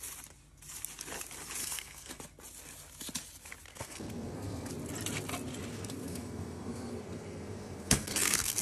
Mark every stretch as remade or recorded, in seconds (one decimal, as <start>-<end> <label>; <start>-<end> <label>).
0.0-1.6 recorded; 1.6-2.2 remade; 2.2-3.7 recorded; 3.7-4.7 remade; 4.7-5.7 recorded; 5.7-8.6 remade